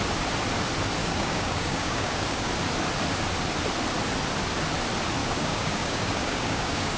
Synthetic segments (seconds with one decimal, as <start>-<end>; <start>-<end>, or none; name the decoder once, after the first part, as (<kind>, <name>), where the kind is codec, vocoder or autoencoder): 1.0-2.5 (codec, DAC); 5.2-7.0